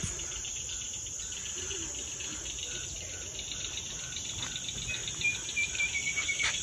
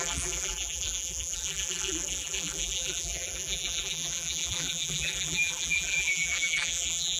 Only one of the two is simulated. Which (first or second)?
second